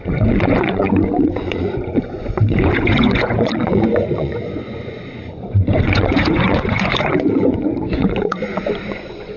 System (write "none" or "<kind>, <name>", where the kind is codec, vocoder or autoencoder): vocoder, Vocos